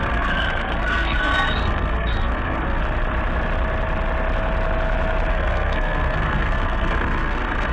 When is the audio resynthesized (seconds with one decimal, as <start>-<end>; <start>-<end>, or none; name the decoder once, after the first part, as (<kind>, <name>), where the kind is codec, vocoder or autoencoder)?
0.0-2.8 (codec, SNAC); 5.3-7.7